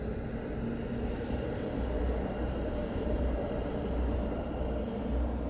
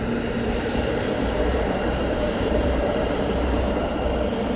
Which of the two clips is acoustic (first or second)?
first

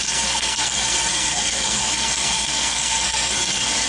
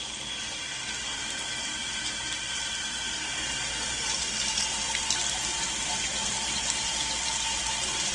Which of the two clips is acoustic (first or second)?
second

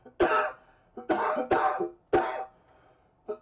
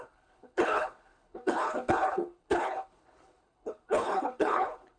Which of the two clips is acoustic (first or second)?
first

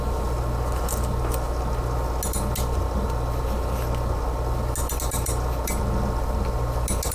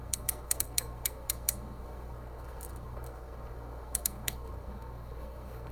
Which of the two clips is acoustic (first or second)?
first